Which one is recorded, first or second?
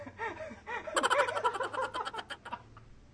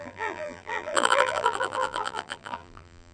first